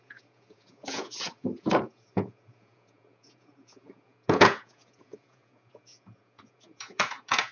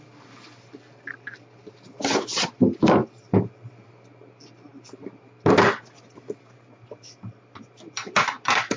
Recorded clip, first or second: second